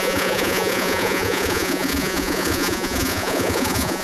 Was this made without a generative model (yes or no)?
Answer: no